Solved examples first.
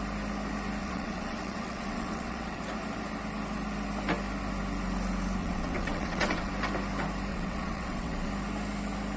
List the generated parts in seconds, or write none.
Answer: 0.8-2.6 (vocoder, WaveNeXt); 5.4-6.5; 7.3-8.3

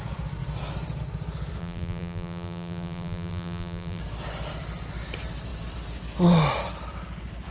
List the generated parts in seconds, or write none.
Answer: 1.6-4.0 (vocoder, BigVGAN v2)

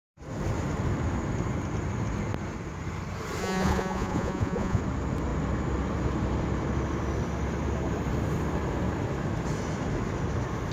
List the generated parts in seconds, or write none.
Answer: 3.4-4.8 (vocoder, Vocos)

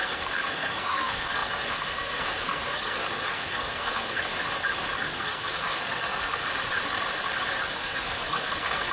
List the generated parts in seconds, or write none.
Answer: 0.0-4.3 (codec, SNAC); 5.0-6.4; 7.7-8.9